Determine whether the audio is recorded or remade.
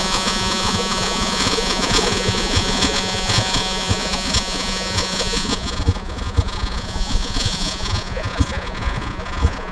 remade